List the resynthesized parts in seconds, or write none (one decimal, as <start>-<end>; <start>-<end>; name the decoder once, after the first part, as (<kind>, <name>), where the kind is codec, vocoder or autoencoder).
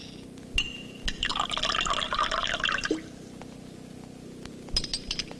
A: none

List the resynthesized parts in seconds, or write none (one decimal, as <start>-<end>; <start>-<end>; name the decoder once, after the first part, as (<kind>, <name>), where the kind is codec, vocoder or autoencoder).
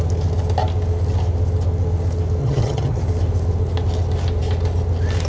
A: 2.4-3.0 (vocoder, HiFi-GAN)